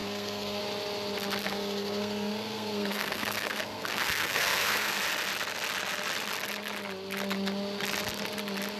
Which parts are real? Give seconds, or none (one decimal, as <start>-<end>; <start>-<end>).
0.6-1.4; 4.9-8.8